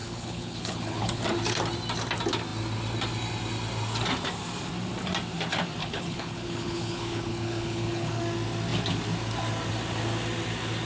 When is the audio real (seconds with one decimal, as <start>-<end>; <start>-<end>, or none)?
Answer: 1.2-5.8; 8.2-10.9